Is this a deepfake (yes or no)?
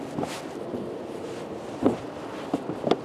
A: no